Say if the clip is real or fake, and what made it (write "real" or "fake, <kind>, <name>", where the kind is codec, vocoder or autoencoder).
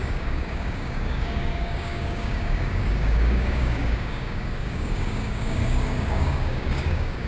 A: fake, codec, DAC